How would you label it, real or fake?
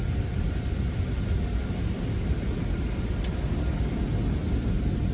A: real